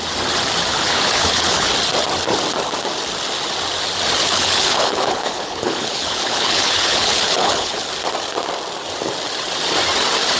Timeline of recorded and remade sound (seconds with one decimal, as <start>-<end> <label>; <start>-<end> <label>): 0.0-0.7 recorded; 0.7-1.7 remade; 1.7-4.2 recorded; 4.2-7.9 remade; 7.9-10.4 recorded